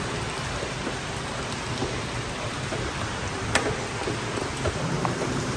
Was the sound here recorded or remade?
recorded